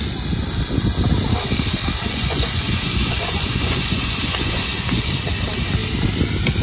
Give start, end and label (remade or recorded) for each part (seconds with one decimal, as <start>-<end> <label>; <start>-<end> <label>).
0.0-2.1 recorded; 2.1-5.1 remade; 5.1-6.6 recorded